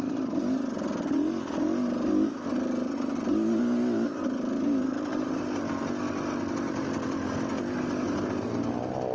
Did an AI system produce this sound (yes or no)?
no